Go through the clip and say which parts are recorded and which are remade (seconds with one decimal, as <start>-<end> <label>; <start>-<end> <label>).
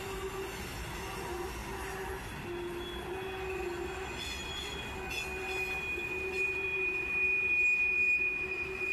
0.0-8.9 recorded